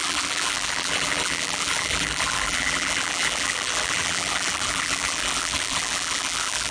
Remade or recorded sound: remade